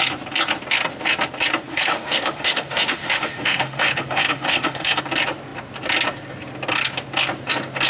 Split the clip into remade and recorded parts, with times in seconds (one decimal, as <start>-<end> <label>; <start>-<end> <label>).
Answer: 0.0-1.7 recorded; 1.7-5.0 remade; 5.0-7.9 recorded